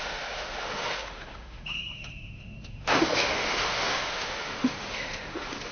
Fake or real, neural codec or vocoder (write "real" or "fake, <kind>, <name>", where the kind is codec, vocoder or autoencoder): fake, autoencoder, DAC-VAE